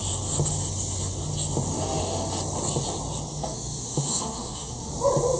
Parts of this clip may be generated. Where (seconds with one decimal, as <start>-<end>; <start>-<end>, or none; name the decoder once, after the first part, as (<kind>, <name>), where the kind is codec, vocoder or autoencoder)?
1.7-2.4 (autoencoder, DAC-VAE); 3.4-4.9